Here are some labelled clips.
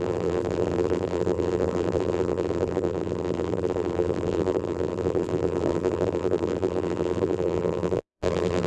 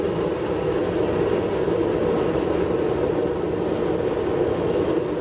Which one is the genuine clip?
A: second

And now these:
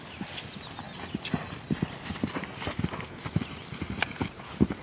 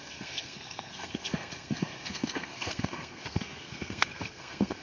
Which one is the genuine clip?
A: first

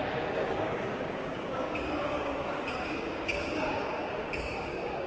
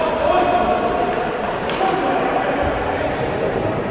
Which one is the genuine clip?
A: second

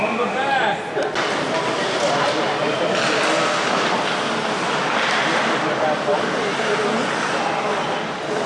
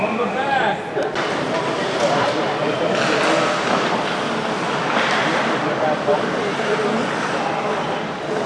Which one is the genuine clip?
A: first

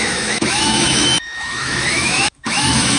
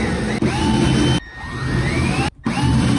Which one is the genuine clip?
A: second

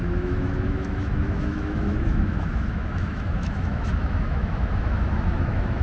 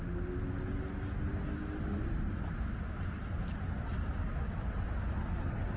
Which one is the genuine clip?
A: second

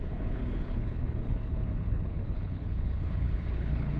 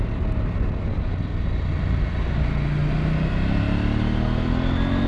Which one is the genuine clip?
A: second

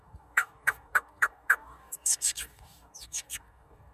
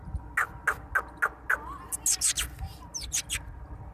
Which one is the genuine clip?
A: second